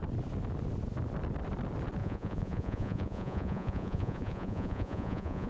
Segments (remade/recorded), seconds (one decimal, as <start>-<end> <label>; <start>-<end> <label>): 0.0-2.0 recorded; 2.0-5.5 remade